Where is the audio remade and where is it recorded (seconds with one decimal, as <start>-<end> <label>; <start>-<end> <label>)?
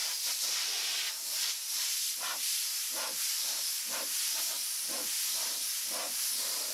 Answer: 0.0-1.4 recorded; 1.4-6.7 remade